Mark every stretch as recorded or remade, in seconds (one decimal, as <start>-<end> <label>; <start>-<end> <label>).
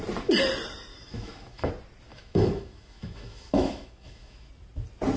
0.0-0.9 recorded; 0.9-1.7 remade; 1.7-2.1 recorded; 2.1-4.5 remade; 4.5-5.2 recorded